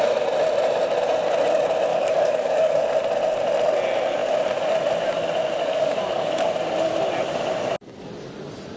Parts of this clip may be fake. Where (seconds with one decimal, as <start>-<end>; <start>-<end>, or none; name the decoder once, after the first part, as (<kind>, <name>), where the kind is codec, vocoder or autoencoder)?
1.9-2.8 (codec, DAC); 5.6-6.5